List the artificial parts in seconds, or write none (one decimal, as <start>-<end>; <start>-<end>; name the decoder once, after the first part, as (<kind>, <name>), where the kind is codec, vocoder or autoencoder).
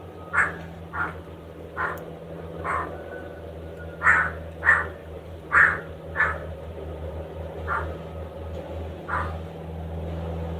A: 5.0-5.8 (vocoder, BigVGAN v2); 6.4-7.1